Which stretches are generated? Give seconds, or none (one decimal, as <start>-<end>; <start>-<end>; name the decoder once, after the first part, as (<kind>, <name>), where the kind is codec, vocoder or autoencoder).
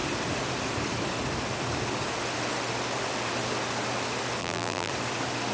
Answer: 4.4-4.9 (vocoder, BigVGAN v2)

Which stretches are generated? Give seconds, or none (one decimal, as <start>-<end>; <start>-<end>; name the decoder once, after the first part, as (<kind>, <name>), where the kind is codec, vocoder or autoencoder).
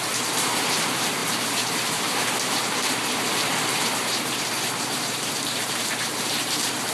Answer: 0.0-6.9 (vocoder, BigVGAN v2)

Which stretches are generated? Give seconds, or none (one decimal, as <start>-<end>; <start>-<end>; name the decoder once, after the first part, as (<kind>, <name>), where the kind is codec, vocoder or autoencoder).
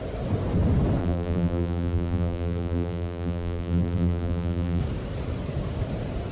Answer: 1.0-4.8 (vocoder, BigVGAN v2)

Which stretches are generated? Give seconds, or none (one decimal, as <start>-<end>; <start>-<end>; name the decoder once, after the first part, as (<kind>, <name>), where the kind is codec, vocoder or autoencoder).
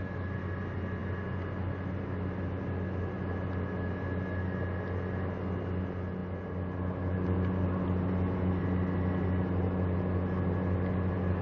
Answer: none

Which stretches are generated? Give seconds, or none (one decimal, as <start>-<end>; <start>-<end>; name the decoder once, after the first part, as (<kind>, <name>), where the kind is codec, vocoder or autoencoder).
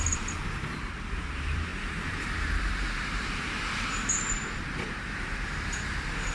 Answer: 0.0-1.7 (vocoder, BigVGAN v2); 2.7-6.3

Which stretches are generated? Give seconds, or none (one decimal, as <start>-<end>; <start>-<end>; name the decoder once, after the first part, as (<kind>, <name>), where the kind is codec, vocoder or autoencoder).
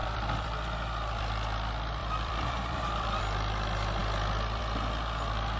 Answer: 0.0-1.2 (vocoder, BigVGAN v2); 2.0-3.2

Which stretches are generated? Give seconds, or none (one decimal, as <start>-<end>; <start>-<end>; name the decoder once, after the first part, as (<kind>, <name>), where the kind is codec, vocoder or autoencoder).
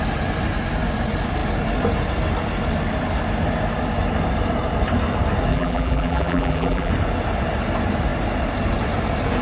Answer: 5.5-6.9 (vocoder, BigVGAN v2)